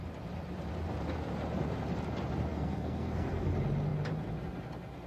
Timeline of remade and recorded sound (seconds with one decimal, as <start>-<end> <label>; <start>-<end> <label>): 0.0-2.5 recorded; 2.5-3.5 remade; 3.5-5.1 recorded